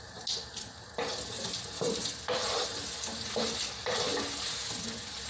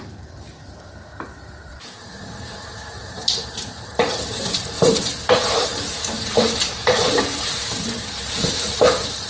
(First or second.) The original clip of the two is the first